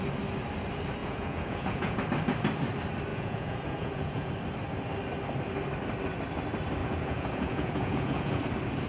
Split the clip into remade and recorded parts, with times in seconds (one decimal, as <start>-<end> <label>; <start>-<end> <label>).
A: 0.0-1.0 recorded; 1.0-2.0 remade; 2.0-3.1 recorded; 3.1-4.3 remade; 4.3-6.8 recorded; 6.8-8.4 remade; 8.4-8.9 recorded